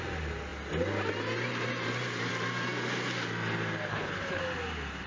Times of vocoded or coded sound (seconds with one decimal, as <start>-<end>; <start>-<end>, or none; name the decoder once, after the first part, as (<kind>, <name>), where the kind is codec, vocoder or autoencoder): 3.9-4.4 (codec, HILCodec)